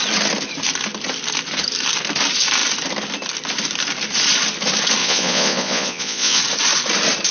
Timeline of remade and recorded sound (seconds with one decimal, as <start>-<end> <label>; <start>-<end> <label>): 0.0-5.0 recorded; 5.0-6.4 remade; 6.4-7.3 recorded